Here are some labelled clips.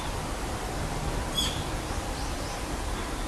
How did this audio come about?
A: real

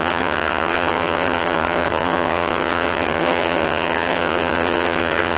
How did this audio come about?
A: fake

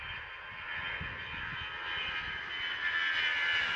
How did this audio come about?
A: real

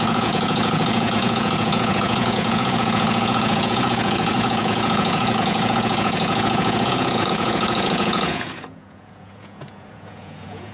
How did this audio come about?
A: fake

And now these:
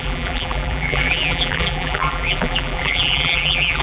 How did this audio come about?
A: fake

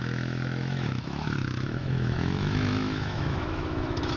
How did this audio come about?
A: fake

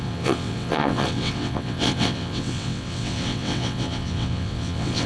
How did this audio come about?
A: fake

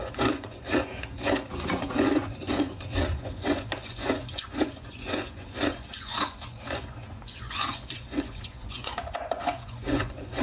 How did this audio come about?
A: fake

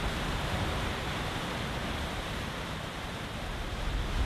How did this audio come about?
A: real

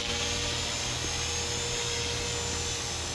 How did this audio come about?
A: real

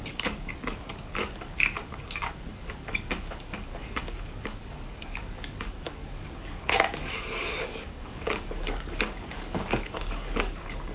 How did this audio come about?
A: fake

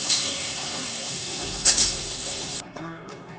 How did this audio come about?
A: fake